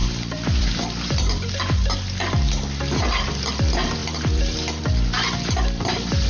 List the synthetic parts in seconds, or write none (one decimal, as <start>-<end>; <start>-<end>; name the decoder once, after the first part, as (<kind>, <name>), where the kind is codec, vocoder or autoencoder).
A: 0.0-1.5 (vocoder, BigVGAN v2); 4.0-4.8